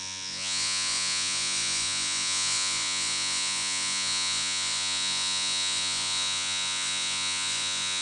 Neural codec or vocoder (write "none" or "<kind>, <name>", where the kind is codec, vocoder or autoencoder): vocoder, Vocos